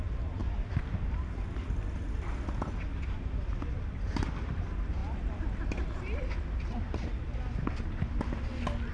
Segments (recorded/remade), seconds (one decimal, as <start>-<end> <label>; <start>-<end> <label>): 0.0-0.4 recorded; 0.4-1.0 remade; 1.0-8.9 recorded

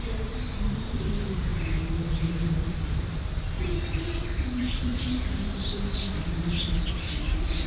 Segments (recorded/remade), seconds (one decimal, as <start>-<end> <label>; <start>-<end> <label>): 0.0-7.7 remade

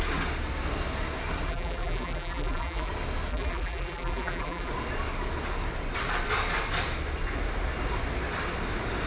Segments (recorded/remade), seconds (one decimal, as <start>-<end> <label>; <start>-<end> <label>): 0.0-1.5 recorded; 1.5-2.9 remade; 2.9-3.3 recorded; 3.3-4.7 remade; 4.7-9.1 recorded